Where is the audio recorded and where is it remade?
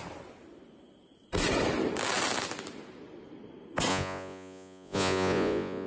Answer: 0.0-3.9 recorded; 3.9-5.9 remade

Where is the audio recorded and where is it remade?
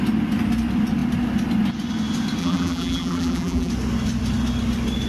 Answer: 0.0-2.4 recorded; 2.4-3.7 remade; 3.7-5.1 recorded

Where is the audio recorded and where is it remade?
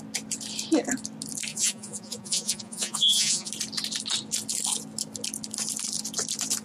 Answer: 0.0-1.5 recorded; 1.5-3.5 remade; 3.5-6.6 recorded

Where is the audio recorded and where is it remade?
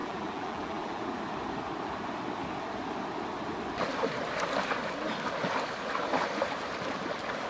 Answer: 0.0-1.2 remade; 1.2-7.5 recorded